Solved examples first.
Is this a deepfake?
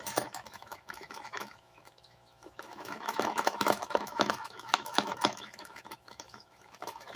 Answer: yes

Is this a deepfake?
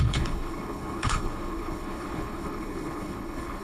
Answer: yes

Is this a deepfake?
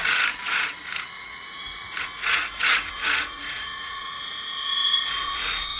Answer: yes